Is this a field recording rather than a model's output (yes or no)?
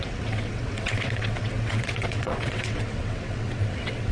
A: no